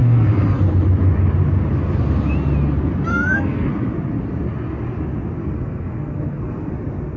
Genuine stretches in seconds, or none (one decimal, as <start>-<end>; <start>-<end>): 0.6-3.1; 3.7-5.4; 6.7-7.2